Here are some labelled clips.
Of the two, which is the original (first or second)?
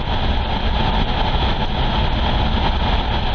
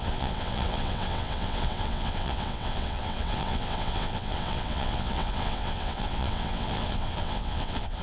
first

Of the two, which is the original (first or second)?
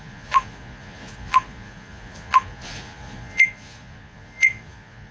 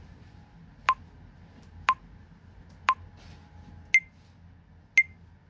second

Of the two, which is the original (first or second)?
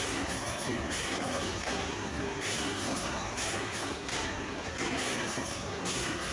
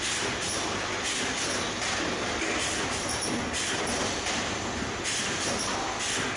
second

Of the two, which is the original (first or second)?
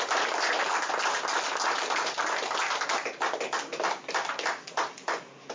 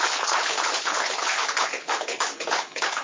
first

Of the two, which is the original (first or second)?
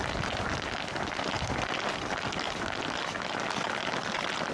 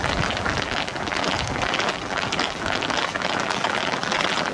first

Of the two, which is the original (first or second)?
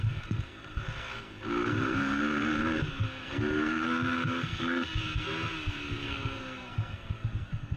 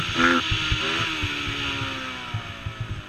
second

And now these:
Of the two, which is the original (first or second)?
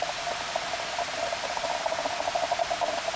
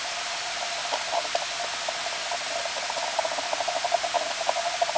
second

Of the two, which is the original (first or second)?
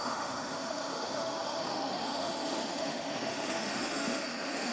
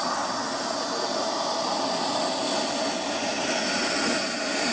second